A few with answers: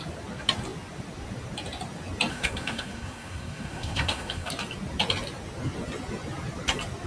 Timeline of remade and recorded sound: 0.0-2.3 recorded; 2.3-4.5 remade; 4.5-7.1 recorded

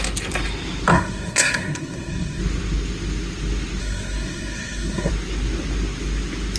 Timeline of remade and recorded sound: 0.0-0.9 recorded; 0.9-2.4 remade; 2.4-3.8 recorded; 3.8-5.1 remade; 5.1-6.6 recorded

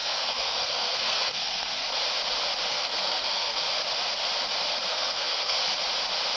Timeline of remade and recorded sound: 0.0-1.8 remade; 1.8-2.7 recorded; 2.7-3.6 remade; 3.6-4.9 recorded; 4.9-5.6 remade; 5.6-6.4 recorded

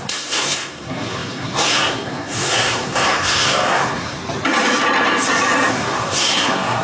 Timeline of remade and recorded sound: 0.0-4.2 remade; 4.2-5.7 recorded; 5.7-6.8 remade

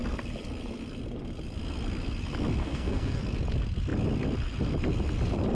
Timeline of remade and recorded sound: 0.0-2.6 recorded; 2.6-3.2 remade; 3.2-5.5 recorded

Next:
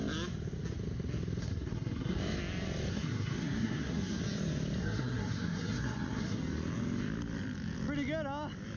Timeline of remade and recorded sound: 0.0-1.4 recorded; 1.4-2.2 remade; 2.2-2.9 recorded; 2.9-4.2 remade; 4.2-4.8 recorded; 4.8-6.4 remade; 6.4-8.8 recorded

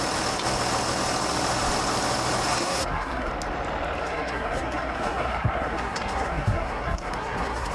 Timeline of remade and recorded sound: 0.0-2.5 recorded; 2.5-3.3 remade; 3.3-4.0 recorded; 4.0-7.7 remade